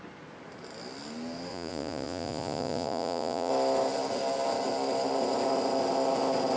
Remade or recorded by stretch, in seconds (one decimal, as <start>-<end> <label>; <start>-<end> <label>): 0.0-1.5 recorded; 1.5-3.5 remade; 3.5-6.6 recorded